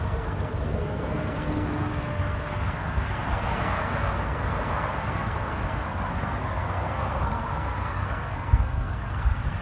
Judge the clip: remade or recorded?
remade